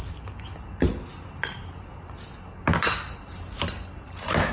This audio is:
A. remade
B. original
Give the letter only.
B